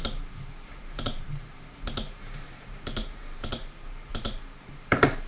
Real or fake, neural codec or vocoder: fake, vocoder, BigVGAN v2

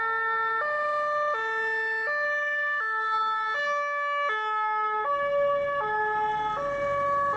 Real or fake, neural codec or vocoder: real